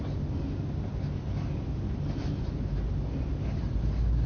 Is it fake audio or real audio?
real